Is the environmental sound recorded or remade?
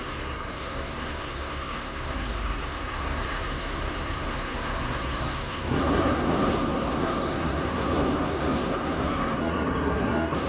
remade